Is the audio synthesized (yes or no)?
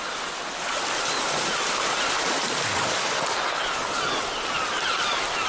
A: no